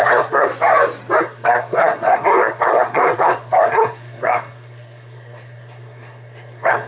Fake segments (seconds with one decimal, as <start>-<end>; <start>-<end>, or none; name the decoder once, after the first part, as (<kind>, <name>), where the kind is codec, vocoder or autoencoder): 0.0-0.5 (codec, SNAC); 1.2-6.9